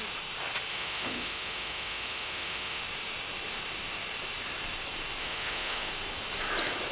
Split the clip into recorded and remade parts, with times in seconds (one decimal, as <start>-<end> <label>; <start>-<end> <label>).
0.0-0.7 recorded; 0.7-2.8 remade; 2.8-5.2 recorded; 5.2-5.9 remade; 5.9-6.9 recorded

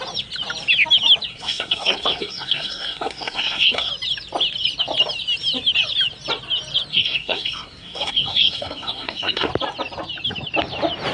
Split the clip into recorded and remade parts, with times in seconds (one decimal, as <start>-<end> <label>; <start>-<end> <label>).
0.0-1.3 recorded; 1.3-3.9 remade; 3.9-6.9 recorded; 6.9-9.5 remade; 9.5-11.1 recorded

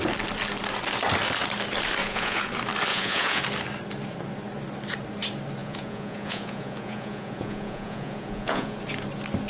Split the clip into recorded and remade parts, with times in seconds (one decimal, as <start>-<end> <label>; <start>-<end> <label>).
0.0-2.0 recorded; 2.0-2.5 remade; 2.5-2.9 recorded; 2.9-3.4 remade; 3.4-5.6 recorded; 5.6-8.8 remade; 8.8-9.5 recorded

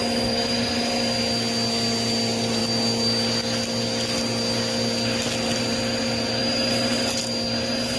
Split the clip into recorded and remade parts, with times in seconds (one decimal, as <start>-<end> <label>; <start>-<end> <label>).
0.0-8.0 recorded

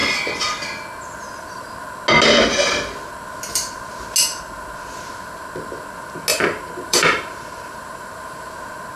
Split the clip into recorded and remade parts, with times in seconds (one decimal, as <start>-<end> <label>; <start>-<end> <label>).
0.0-6.3 recorded; 6.3-8.5 remade; 8.5-9.0 recorded

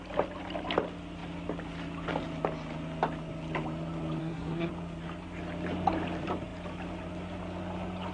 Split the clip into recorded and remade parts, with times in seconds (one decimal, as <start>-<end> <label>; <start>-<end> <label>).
0.0-4.2 recorded; 4.2-4.7 remade; 4.7-8.1 recorded

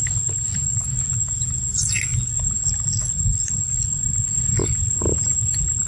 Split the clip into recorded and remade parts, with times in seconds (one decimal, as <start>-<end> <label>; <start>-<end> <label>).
0.0-5.9 recorded